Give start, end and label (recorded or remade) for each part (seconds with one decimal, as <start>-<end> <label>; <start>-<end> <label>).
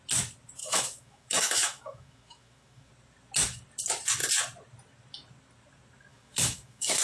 0.0-0.6 recorded; 0.6-2.9 remade; 2.9-6.1 recorded; 6.1-7.0 remade